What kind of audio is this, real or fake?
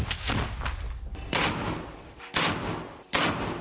real